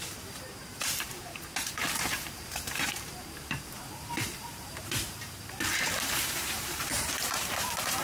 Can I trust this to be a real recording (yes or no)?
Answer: no